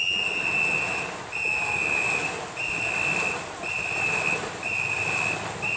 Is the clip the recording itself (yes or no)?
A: yes